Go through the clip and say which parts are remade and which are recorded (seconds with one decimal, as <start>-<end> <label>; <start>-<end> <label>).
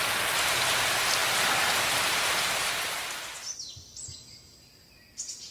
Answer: 0.0-5.5 recorded